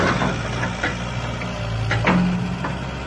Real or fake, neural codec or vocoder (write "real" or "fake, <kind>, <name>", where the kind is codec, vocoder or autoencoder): real